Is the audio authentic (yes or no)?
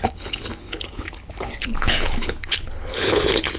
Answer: no